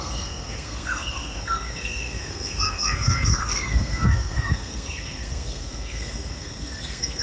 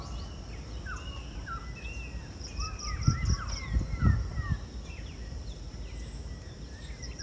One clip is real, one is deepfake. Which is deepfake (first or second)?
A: first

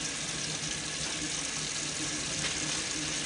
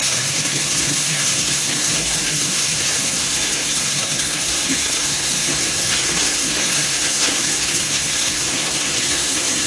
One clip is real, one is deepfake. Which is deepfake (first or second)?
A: second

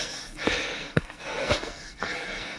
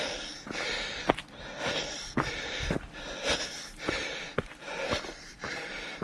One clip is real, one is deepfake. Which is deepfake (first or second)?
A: first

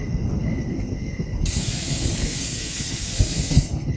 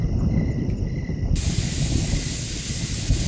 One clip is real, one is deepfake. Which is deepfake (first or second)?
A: first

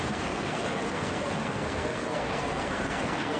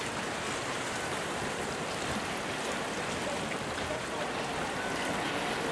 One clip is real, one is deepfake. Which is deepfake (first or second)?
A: first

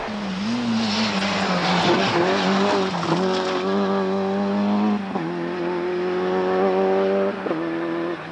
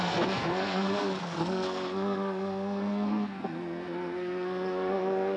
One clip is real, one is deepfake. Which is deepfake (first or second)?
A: second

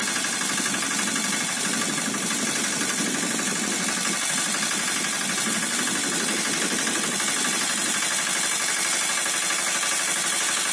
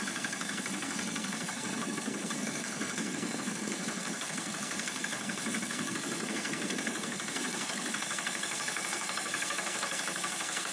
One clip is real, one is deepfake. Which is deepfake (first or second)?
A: second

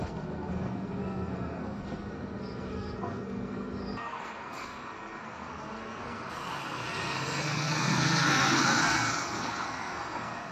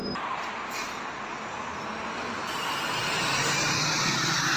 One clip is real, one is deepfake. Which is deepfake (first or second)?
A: first